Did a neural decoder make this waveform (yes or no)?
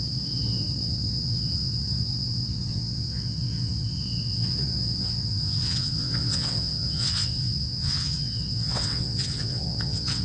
yes